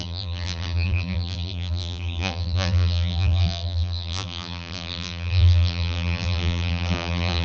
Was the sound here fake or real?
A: fake